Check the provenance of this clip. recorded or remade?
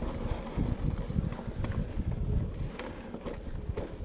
recorded